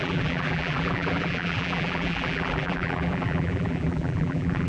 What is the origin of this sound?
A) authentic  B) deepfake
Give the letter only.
B